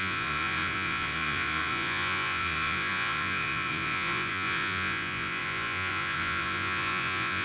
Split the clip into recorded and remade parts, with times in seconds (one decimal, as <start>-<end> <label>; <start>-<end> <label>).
0.0-7.4 remade